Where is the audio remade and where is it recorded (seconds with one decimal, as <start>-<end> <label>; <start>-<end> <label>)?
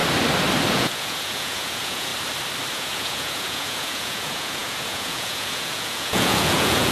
0.0-0.7 recorded; 0.7-2.1 remade; 2.1-2.7 recorded; 2.7-6.9 remade